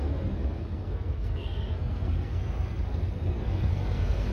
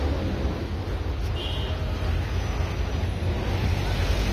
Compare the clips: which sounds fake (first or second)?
first